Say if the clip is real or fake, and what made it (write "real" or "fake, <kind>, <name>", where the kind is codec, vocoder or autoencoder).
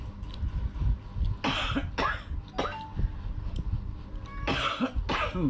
real